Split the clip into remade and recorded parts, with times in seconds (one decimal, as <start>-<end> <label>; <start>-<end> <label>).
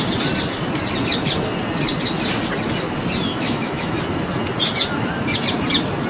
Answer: 0.0-3.3 recorded; 3.3-4.0 remade; 4.0-6.1 recorded